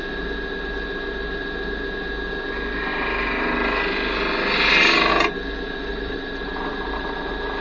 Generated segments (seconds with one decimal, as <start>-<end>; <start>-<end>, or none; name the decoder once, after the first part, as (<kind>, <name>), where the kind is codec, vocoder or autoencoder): 5.9-7.6 (vocoder, BigVGAN v2)